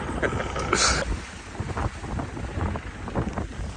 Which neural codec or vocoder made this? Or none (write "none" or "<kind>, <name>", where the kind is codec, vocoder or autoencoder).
none